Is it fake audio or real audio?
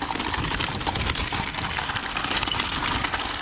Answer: real